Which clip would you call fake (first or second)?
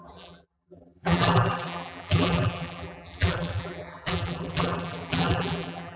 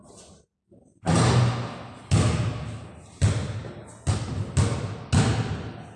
first